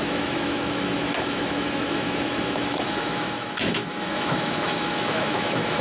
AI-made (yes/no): yes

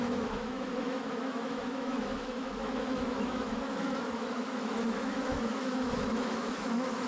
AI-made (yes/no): yes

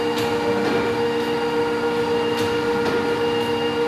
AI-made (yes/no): no